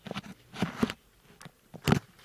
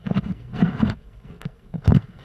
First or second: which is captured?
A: first